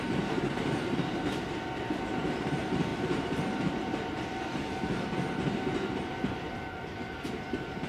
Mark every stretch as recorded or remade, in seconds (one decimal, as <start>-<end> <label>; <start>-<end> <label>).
0.0-7.9 remade

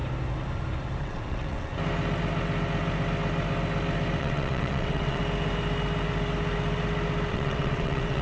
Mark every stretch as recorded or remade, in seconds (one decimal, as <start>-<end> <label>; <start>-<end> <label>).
0.0-1.0 recorded; 1.0-1.7 remade; 1.7-4.2 recorded; 4.2-5.2 remade; 5.2-7.3 recorded; 7.3-8.2 remade

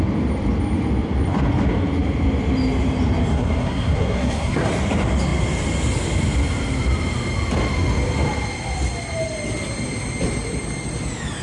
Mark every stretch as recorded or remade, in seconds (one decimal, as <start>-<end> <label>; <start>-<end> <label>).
0.0-3.3 recorded; 3.3-4.7 remade; 4.7-11.4 recorded

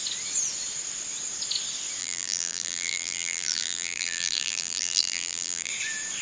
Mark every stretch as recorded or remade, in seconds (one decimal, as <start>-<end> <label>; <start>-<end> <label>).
0.0-2.0 recorded; 2.0-5.7 remade; 5.7-6.2 recorded

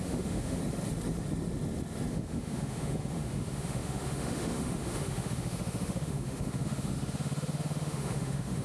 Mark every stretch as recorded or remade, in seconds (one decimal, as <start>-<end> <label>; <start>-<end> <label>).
0.0-0.6 remade; 0.6-2.1 recorded; 2.1-8.6 remade